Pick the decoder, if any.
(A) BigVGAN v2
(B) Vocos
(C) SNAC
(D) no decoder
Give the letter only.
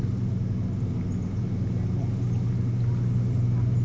D